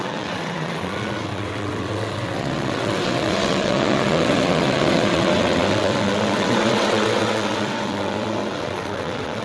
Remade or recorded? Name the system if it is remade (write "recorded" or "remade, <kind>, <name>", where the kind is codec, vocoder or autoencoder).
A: remade, vocoder, WaveNeXt